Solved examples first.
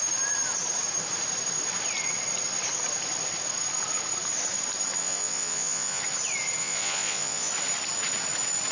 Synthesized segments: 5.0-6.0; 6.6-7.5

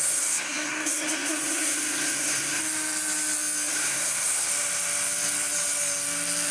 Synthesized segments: 0.0-2.6; 3.7-4.5

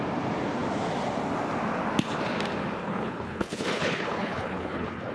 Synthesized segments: 2.8-5.1

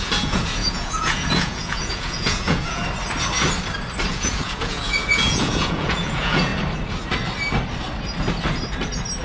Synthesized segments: 0.0-2.8; 4.1-6.5

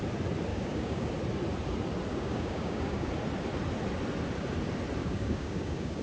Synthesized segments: 0.5-1.1; 2.1-3.1; 5.0-6.0

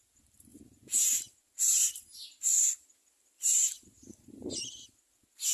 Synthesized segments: 1.8-5.1

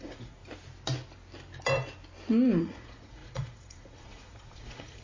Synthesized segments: 0.0-0.4; 2.6-5.0

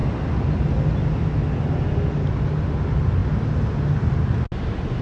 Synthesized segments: none